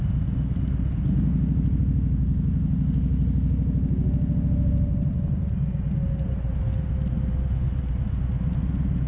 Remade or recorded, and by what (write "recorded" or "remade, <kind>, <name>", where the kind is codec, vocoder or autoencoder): recorded